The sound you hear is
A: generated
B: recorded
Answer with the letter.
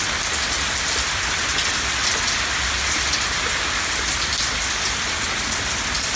B